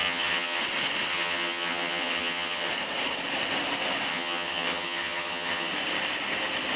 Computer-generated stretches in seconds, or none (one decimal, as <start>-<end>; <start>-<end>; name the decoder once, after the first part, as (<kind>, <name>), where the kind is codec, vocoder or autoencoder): 0.0-0.6 (vocoder, HiFi-GAN); 1.1-2.7; 4.1-5.7